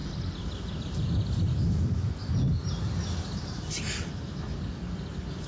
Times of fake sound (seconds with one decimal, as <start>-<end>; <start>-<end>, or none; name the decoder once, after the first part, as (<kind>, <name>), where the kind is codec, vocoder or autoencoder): 1.5-2.3 (autoencoder, DAC-VAE)

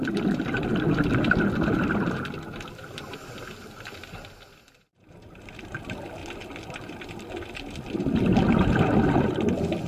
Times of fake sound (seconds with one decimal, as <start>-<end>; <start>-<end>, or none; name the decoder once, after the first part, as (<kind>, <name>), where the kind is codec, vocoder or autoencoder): none

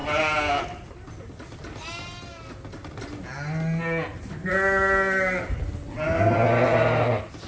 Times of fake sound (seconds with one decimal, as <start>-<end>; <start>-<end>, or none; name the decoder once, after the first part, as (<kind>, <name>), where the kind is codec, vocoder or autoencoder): none